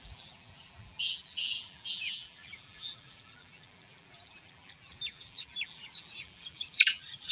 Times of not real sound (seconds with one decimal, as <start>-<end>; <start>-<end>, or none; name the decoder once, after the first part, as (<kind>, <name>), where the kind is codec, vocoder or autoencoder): 0.0-7.3 (vocoder, BigVGAN v2)